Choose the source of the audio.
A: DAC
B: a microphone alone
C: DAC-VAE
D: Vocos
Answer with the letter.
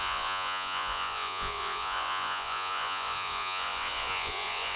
D